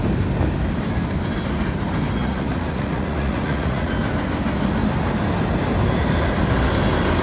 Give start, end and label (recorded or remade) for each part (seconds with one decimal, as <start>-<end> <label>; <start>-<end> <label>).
0.0-2.2 recorded; 2.2-3.9 remade; 3.9-7.2 recorded